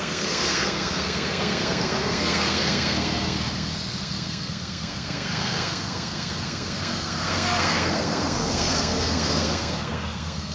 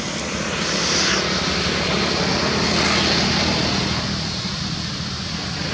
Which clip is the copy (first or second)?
first